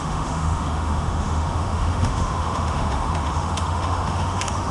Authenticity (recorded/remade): remade